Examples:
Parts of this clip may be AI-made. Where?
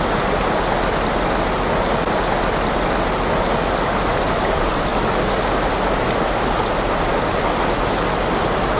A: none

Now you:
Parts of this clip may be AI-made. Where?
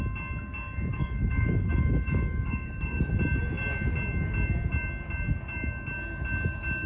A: 0.9-3.1 (codec, DAC)